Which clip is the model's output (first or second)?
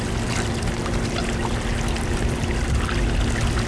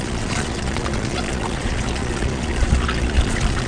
second